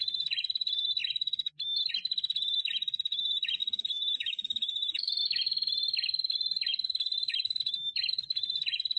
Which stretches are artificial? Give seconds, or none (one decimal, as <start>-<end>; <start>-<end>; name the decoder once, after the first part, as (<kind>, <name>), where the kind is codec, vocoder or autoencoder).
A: 3.6-5.2 (autoencoder, DAC-VAE); 6.7-7.6